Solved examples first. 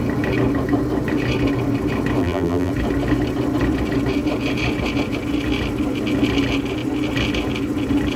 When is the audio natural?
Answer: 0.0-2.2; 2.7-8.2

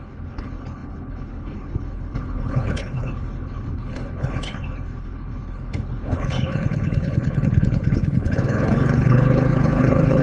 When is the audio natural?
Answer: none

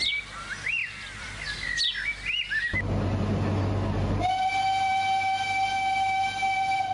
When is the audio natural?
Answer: 0.0-6.9

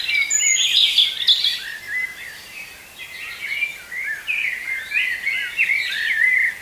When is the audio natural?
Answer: 0.0-6.6

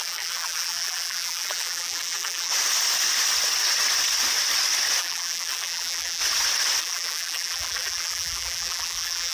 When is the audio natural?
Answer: 2.5-5.0; 6.2-6.8

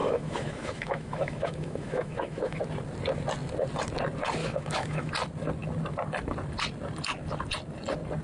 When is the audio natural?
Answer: 2.6-4.4; 5.1-8.2

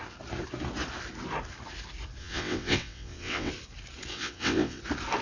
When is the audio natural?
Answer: 0.0-2.2; 3.5-4.1; 4.8-5.2